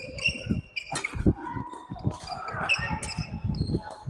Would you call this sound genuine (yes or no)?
yes